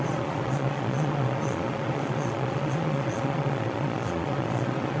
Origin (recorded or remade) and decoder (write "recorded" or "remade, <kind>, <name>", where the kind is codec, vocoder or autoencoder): remade, vocoder, Vocos